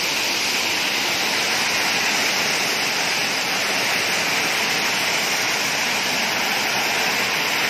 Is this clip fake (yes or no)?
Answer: no